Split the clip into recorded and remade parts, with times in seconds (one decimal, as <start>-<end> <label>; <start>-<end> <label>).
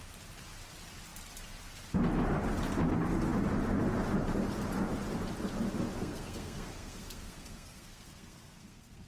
0.0-6.0 recorded; 6.0-9.1 remade